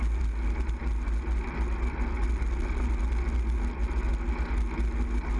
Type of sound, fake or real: real